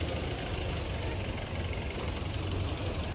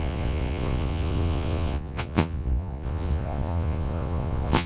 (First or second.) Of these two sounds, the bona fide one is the first